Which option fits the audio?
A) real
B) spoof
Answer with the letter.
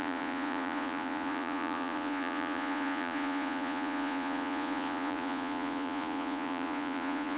B